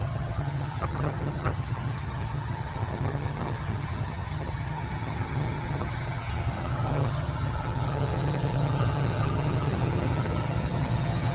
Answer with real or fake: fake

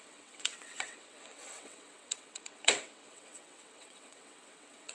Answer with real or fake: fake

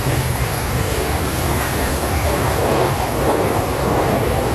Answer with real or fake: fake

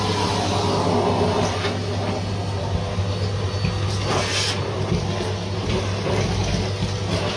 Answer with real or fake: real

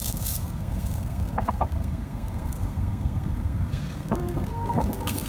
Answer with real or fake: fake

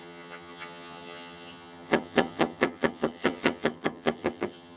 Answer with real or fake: fake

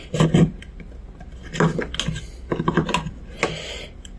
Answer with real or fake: real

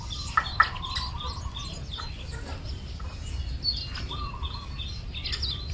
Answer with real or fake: real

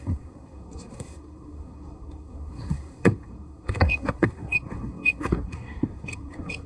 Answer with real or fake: fake